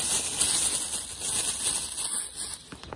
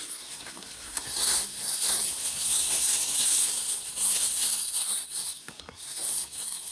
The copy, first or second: second